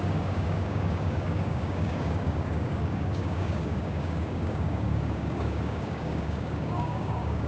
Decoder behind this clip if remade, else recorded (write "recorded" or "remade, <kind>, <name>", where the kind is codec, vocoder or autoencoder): remade, codec, DAC